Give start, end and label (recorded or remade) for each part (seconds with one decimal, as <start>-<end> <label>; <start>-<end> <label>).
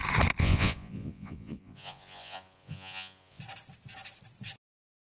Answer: 0.0-0.4 recorded; 0.4-3.4 remade; 3.4-5.0 recorded